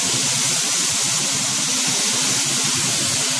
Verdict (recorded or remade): recorded